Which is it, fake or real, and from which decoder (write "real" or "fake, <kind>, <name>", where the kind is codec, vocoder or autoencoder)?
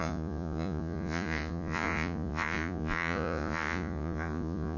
fake, vocoder, Vocos